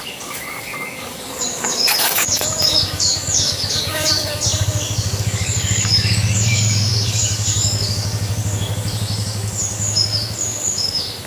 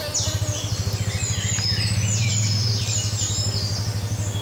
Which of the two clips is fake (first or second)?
first